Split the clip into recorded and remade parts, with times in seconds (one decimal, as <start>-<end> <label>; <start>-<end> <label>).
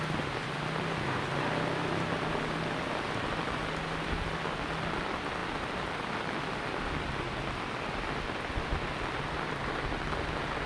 0.0-10.7 recorded